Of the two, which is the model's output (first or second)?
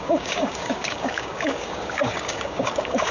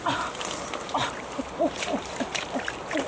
first